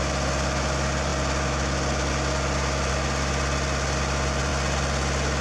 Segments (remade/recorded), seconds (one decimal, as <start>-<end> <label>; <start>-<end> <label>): 0.0-5.4 recorded